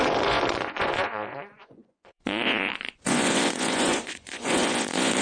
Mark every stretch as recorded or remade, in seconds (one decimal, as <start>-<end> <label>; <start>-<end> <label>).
0.0-5.2 remade